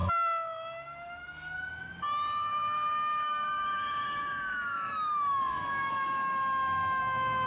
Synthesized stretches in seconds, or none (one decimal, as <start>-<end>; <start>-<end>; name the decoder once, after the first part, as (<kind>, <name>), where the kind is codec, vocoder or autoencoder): 0.0-1.9 (autoencoder, DAC-VAE); 2.5-7.0